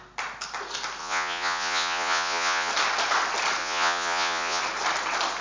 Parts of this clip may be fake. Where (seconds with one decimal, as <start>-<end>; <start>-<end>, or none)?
1.0-2.7; 3.6-4.6